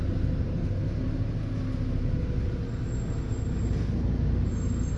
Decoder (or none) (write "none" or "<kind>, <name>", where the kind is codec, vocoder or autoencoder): none